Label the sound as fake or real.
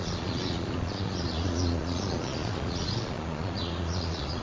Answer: fake